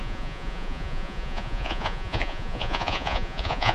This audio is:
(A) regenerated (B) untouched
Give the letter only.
A